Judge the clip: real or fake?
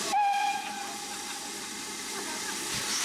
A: real